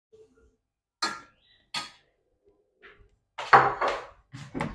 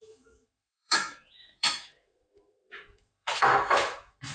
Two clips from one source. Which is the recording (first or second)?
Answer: first